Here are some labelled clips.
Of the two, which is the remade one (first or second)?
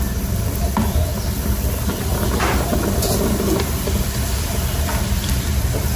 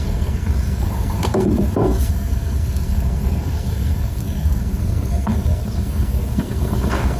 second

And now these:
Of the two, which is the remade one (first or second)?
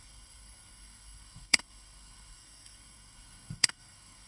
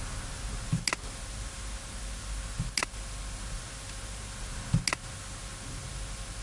first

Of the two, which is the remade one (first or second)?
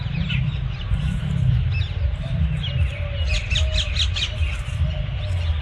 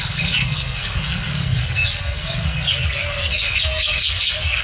second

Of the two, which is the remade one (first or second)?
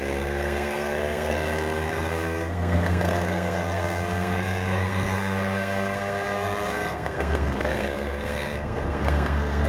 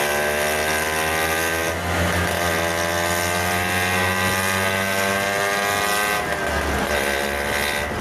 first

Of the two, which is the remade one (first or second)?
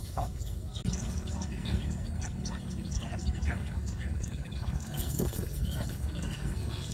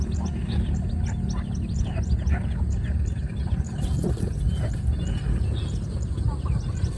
first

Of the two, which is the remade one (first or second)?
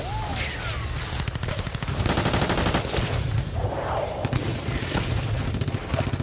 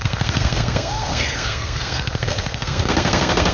second